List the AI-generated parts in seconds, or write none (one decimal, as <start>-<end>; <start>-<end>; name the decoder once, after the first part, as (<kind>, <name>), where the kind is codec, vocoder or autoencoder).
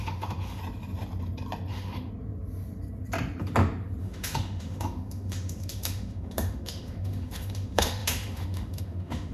0.0-0.6 (autoencoder, DAC-VAE); 1.7-2.1; 4.0-9.3